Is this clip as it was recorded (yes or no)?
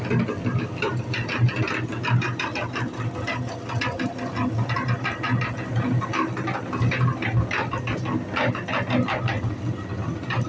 yes